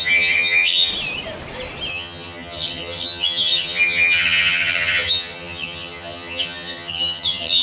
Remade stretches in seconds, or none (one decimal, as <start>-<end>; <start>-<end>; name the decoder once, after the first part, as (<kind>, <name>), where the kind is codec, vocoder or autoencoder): 0.0-0.9 (vocoder, HiFi-GAN); 1.9-7.6